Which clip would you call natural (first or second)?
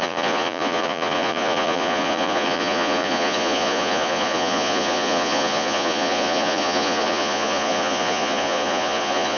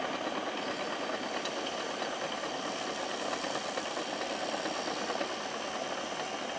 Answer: second